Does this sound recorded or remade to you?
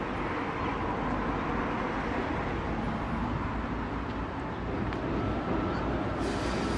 recorded